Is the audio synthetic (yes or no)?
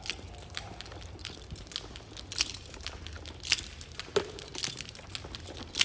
no